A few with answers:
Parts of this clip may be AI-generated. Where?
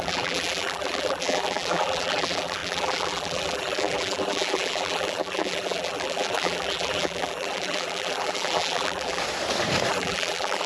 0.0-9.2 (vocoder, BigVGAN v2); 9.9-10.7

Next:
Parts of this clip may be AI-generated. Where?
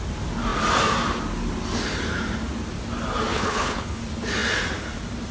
3.3-4.0 (codec, HILCodec)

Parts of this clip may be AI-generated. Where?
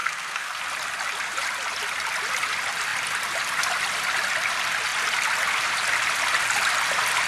0.0-0.6 (codec, SNAC)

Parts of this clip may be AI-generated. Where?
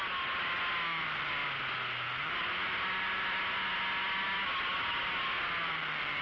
none